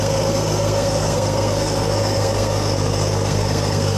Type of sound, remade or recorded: remade